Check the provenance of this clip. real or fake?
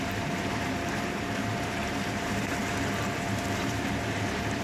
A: fake